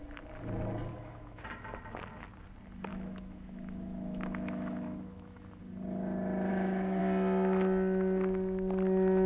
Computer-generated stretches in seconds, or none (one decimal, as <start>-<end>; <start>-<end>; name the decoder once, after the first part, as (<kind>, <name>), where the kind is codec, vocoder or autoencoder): 0.9-1.4 (autoencoder, DAC-VAE); 2.9-5.6; 6.5-7.0